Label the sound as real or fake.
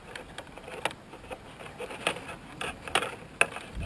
real